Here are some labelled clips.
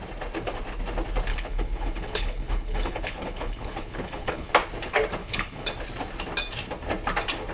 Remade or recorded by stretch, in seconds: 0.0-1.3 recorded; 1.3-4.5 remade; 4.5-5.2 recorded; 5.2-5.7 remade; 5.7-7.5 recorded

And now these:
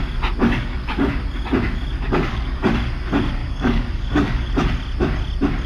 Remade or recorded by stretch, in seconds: 0.0-0.4 recorded; 0.4-1.1 remade; 1.1-1.9 recorded; 1.9-2.7 remade; 2.7-3.4 recorded; 3.4-4.5 remade; 4.5-5.7 recorded

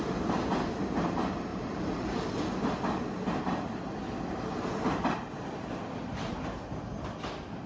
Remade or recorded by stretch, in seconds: 0.0-1.5 recorded; 1.5-2.1 remade; 2.1-7.7 recorded

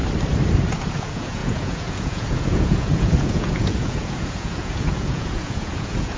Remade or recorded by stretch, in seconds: 0.0-0.8 recorded; 0.8-6.2 remade

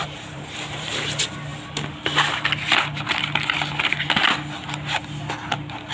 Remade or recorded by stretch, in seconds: 0.0-0.9 remade; 0.9-5.9 recorded